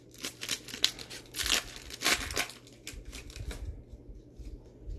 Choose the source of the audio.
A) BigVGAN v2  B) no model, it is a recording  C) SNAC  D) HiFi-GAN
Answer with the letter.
B